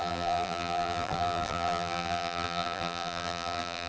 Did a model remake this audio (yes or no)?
yes